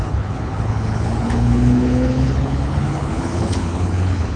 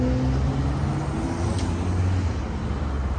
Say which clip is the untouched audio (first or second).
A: second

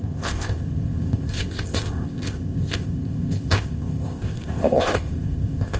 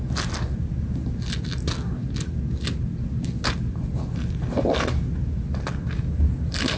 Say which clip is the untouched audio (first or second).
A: second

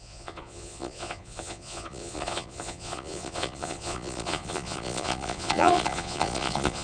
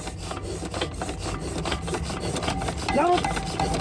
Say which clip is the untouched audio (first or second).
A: second